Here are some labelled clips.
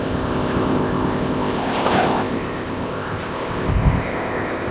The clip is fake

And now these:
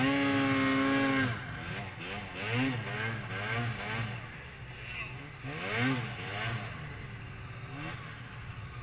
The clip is real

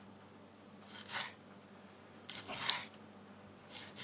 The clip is real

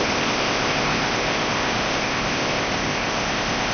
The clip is fake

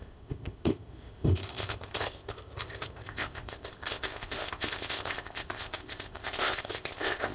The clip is fake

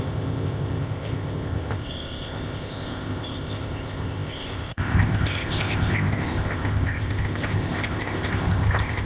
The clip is fake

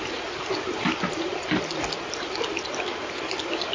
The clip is real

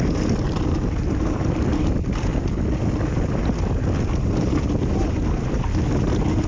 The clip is real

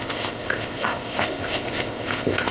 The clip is fake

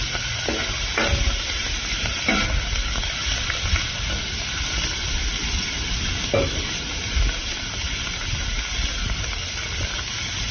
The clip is real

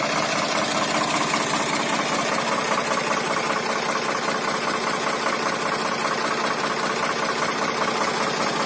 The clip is real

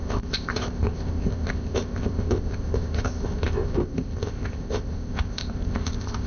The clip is fake